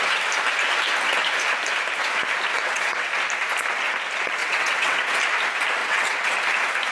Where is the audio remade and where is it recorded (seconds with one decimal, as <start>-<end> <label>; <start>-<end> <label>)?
0.0-2.6 recorded; 2.6-3.1 remade; 3.1-4.4 recorded; 4.4-5.0 remade; 5.0-5.8 recorded; 5.8-6.3 remade; 6.3-6.9 recorded